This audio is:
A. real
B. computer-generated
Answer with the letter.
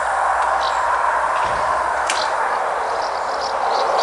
A